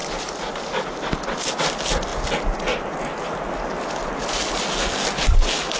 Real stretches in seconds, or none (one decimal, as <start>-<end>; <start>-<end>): 0.0-5.8